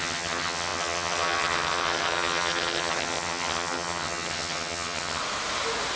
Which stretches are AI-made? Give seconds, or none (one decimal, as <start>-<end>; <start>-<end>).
0.0-5.2